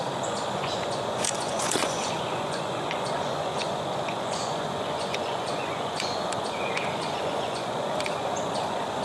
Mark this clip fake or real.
fake